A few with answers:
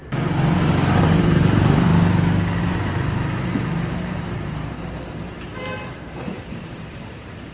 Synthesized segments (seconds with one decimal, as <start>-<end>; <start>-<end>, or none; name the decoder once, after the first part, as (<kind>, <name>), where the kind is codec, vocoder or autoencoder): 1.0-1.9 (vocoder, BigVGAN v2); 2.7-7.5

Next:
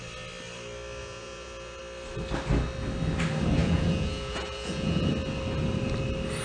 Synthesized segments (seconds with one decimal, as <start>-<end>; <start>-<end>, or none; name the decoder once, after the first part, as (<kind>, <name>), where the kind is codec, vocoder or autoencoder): 1.0-1.8 (vocoder, Vocos); 3.6-5.1

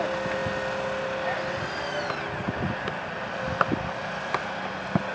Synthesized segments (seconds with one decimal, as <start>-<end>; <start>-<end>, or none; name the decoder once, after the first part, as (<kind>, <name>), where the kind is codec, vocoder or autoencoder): none

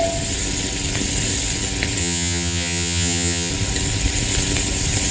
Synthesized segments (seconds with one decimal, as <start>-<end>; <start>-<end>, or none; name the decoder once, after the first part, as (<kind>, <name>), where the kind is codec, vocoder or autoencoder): 2.0-3.5 (vocoder, HiFi-GAN)